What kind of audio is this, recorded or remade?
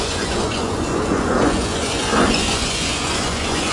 remade